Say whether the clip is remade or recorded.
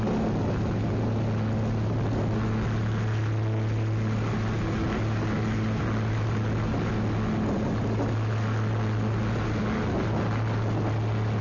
recorded